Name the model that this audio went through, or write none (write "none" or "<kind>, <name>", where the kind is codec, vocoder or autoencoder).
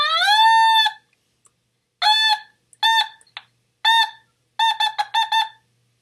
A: none